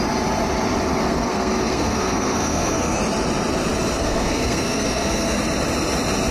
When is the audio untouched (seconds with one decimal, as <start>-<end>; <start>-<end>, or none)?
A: 0.0-1.0; 3.0-4.0; 5.4-6.3